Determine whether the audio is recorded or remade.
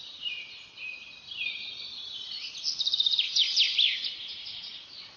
recorded